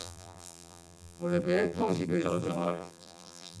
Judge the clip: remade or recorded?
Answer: remade